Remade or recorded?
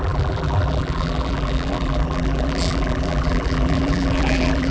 remade